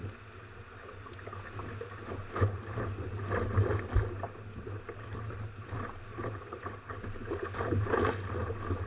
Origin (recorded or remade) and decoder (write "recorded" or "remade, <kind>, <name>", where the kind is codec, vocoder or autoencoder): recorded